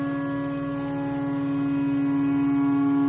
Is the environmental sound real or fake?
real